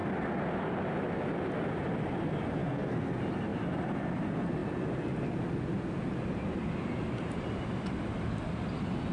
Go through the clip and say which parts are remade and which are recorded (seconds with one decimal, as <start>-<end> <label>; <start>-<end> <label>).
0.0-2.6 recorded; 2.6-3.1 remade; 3.1-9.1 recorded